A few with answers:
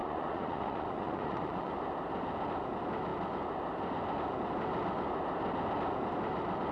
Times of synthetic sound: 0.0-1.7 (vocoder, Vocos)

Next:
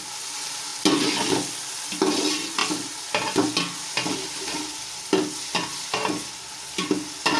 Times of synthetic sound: none

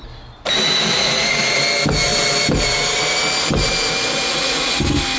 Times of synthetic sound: 0.9-1.6 (vocoder, Vocos); 4.3-4.8

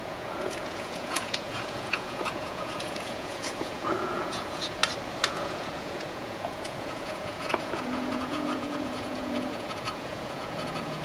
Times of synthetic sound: 0.0-4.8 (vocoder, Vocos); 5.3-11.0

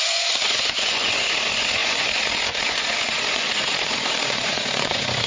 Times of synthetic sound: 0.0-5.3 (vocoder, Vocos)